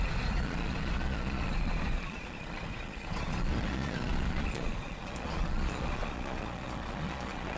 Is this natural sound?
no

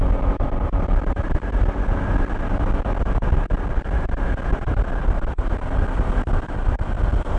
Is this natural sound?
yes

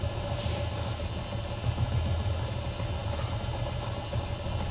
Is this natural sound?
yes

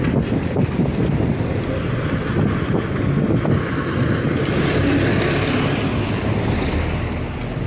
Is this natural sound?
yes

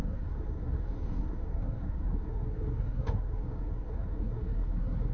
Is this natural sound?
no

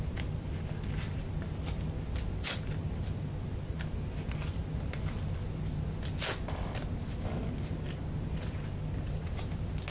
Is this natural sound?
yes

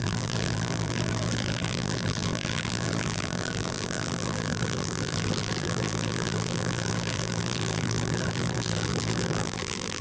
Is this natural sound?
no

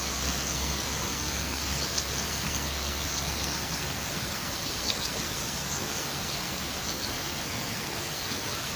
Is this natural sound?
no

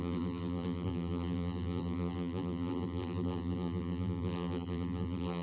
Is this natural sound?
no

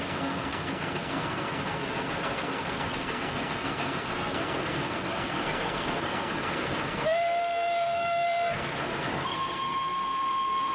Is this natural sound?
no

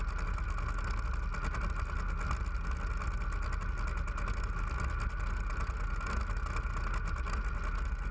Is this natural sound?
yes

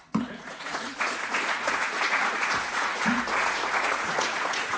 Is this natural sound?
no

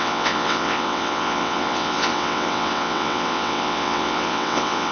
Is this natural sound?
no